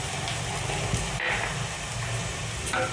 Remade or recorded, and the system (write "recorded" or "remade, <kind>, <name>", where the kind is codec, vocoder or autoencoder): recorded